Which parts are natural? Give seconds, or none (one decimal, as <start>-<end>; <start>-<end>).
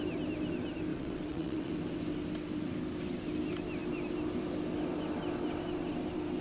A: 0.0-0.9; 1.7-6.4